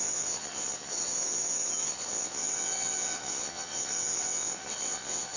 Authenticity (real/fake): fake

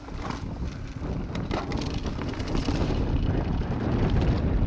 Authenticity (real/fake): real